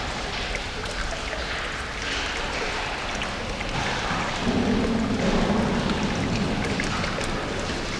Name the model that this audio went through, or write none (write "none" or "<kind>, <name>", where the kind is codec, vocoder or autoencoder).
none